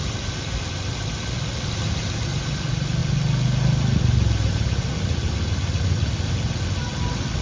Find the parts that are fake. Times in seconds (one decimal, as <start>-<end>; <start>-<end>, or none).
none